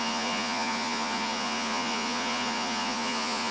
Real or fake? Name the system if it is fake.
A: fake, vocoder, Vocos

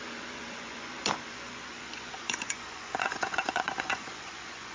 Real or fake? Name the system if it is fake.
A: fake, vocoder, Vocos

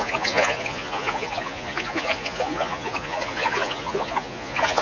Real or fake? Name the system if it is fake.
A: fake, vocoder, Vocos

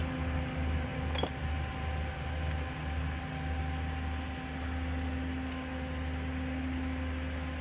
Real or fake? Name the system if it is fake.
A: real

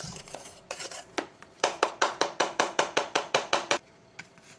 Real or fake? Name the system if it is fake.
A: fake, vocoder, Vocos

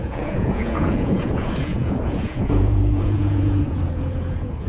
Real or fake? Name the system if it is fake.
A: fake, vocoder, Vocos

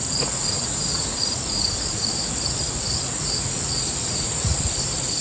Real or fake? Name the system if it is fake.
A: fake, vocoder, Vocos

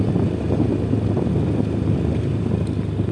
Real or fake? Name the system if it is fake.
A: real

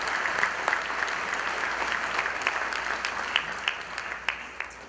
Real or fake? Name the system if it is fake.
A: real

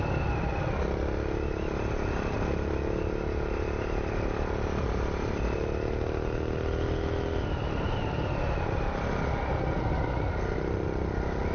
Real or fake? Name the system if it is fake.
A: real